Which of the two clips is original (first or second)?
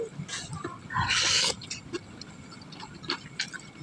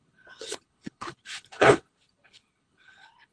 first